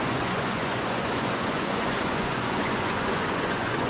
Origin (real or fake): fake